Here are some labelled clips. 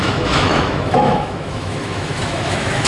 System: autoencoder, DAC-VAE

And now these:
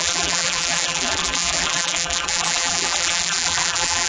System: vocoder, BigVGAN v2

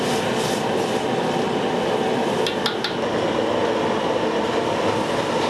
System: none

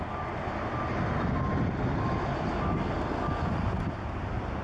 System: none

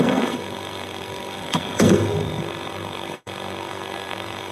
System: codec, SNAC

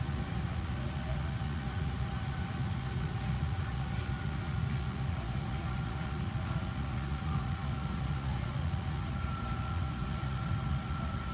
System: vocoder, Vocos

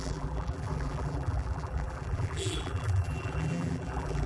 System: vocoder, BigVGAN v2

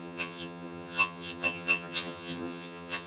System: vocoder, HiFi-GAN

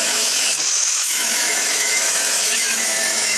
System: autoencoder, DAC-VAE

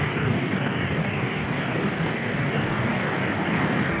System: codec, DAC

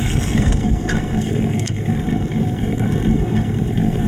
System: codec, SNAC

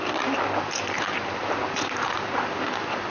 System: none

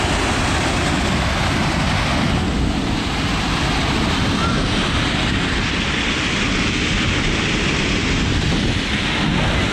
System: none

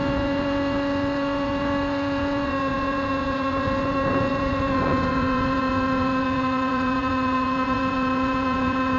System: vocoder, Vocos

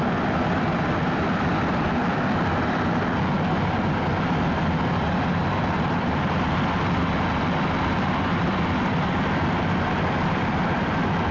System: none